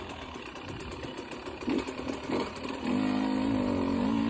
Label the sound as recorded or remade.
recorded